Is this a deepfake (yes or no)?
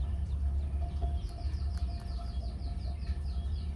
no